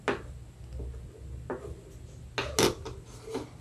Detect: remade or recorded recorded